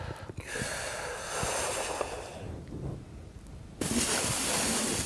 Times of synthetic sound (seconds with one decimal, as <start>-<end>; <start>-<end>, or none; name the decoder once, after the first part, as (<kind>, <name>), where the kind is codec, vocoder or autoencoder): 3.2-4.0 (vocoder, BigVGAN v2)